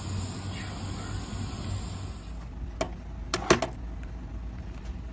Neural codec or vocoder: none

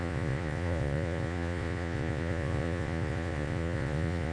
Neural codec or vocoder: vocoder, Vocos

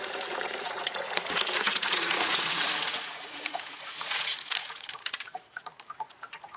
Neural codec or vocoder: vocoder, Vocos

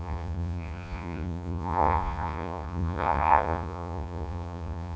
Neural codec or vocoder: vocoder, Vocos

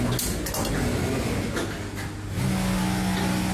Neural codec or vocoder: none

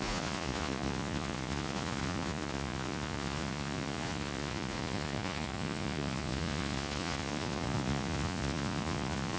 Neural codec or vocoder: vocoder, Vocos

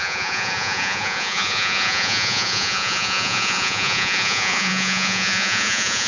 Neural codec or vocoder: vocoder, Vocos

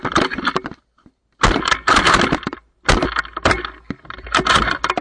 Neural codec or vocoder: none